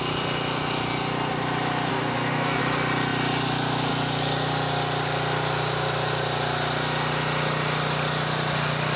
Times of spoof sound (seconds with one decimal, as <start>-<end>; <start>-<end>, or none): 1.9-2.6